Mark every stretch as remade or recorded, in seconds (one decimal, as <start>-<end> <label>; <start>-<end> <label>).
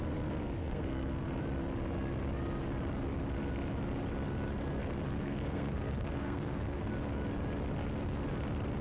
0.0-0.6 recorded; 0.6-1.4 remade; 1.4-4.8 recorded; 4.8-6.9 remade; 6.9-8.8 recorded